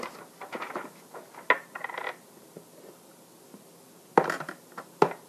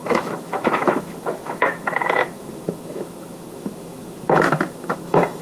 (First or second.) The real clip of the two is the first